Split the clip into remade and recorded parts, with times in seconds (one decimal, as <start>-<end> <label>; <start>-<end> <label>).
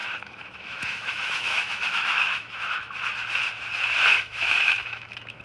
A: 0.0-2.9 remade; 2.9-4.1 recorded; 4.1-5.4 remade